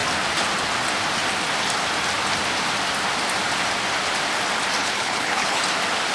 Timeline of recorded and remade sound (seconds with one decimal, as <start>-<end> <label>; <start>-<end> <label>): 0.0-4.8 recorded; 4.8-5.6 remade; 5.6-6.1 recorded